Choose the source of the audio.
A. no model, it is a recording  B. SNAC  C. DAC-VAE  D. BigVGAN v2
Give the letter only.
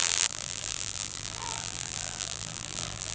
D